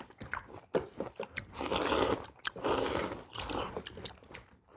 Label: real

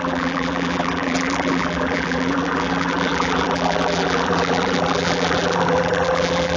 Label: fake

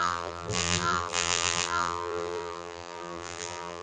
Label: fake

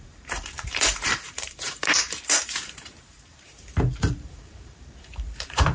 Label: fake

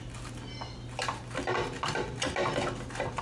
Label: real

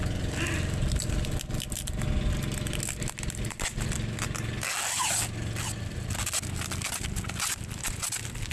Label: real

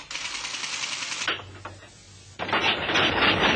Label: real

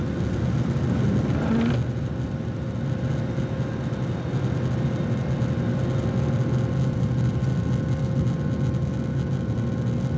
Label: real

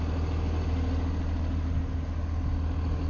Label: real